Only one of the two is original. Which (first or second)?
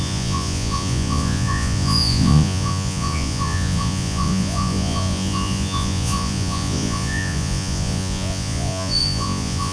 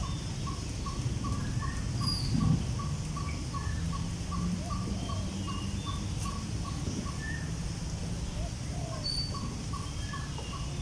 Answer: second